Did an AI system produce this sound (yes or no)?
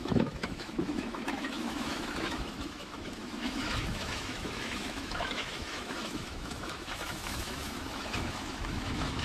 yes